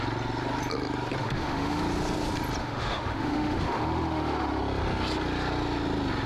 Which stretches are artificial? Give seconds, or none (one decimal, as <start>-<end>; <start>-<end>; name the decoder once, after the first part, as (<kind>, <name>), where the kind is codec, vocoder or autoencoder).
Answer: 1.2-1.8 (autoencoder, DAC-VAE); 2.6-4.6